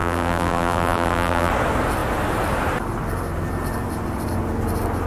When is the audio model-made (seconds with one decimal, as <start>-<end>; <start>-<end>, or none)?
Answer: 0.0-1.5